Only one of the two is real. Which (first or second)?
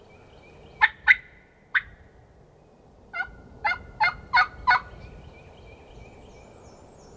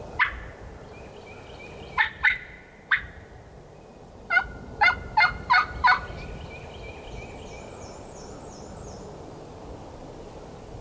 first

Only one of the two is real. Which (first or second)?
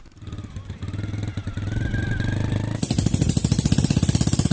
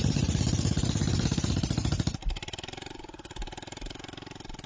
first